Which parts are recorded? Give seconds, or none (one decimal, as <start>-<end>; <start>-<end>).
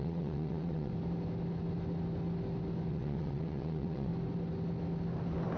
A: 0.9-2.9; 4.1-5.6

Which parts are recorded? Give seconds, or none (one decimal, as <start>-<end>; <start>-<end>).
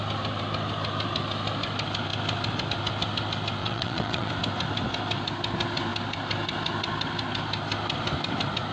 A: 0.0-3.6; 4.3-8.7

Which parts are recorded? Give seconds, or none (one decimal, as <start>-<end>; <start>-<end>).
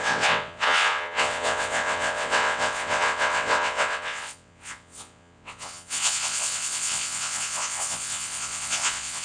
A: none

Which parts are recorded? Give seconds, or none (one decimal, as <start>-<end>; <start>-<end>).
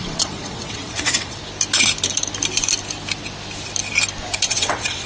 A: 1.4-4.5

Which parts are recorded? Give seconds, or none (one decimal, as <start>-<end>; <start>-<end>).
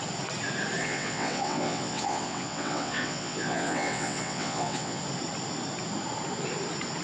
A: 0.0-0.8; 5.0-7.0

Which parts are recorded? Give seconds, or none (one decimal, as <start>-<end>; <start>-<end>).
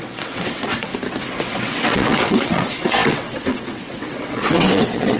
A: 0.9-1.5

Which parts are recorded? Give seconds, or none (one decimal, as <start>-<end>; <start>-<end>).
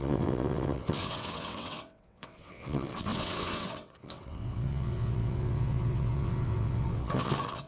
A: none